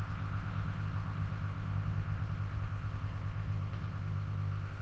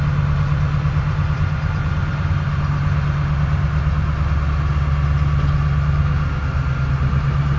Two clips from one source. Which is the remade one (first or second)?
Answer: first